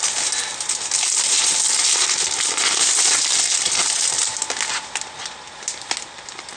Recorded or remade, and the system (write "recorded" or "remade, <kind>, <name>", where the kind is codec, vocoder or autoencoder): recorded